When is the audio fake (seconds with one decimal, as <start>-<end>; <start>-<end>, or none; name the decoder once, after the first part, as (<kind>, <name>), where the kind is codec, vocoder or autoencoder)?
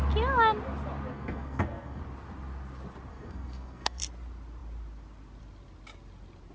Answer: 1.1-2.0 (codec, SNAC); 3.1-4.0